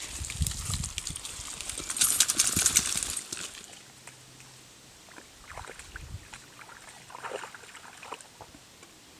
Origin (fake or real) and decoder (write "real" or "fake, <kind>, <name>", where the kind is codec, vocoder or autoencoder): real